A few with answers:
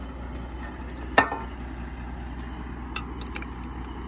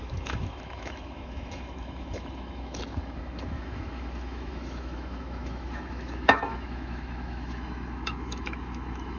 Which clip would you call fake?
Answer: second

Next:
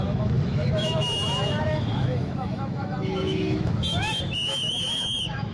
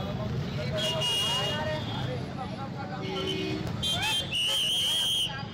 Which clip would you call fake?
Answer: first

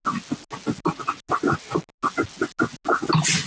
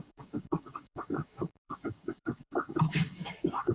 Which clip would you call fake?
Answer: second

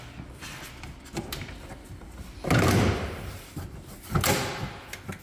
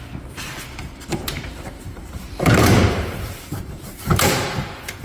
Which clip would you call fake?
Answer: second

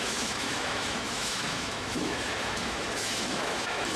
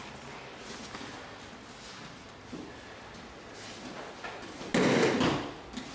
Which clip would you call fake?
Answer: first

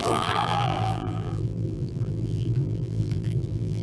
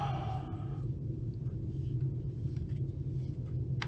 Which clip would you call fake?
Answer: first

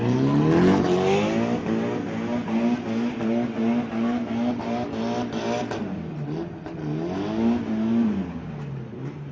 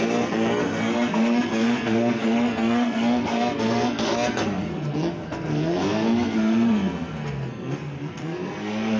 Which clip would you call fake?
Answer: second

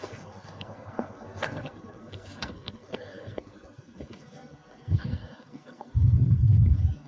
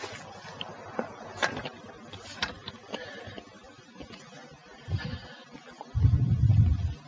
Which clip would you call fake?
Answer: first